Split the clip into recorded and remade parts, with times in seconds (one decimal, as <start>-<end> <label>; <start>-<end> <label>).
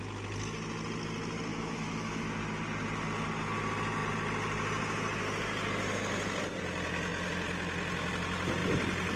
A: 0.0-1.5 recorded; 1.5-2.3 remade; 2.3-9.2 recorded